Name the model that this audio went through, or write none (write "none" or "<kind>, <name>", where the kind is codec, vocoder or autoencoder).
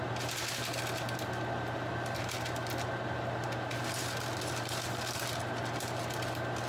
none